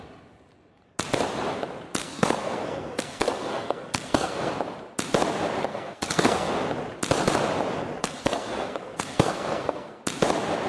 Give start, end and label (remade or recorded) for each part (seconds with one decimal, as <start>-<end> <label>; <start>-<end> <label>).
0.0-2.0 recorded; 2.0-4.5 remade; 4.5-5.7 recorded; 5.7-6.5 remade; 6.5-8.0 recorded; 8.0-10.0 remade; 10.0-10.7 recorded